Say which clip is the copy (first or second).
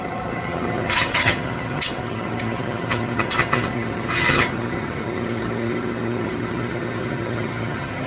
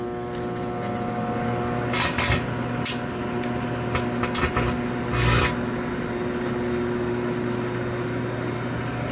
first